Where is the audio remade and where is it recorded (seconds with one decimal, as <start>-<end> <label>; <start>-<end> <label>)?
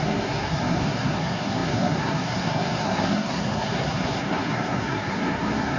0.0-5.8 remade